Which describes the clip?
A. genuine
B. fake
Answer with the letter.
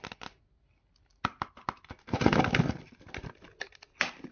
A